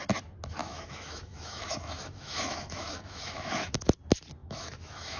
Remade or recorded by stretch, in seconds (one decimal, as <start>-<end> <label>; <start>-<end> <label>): 0.0-0.6 recorded; 0.6-3.7 remade; 3.7-4.4 recorded; 4.4-5.2 remade